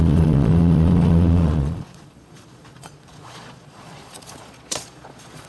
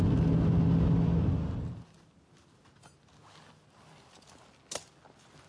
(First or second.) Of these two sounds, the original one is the second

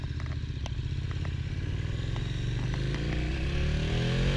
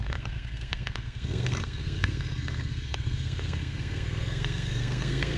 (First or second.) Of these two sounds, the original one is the first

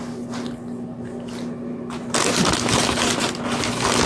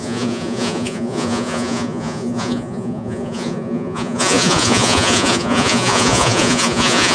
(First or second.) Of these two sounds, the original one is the first